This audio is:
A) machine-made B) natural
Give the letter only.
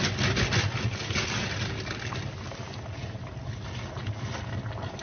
B